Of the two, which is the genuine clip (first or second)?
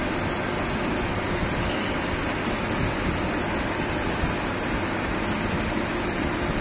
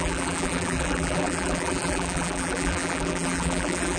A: first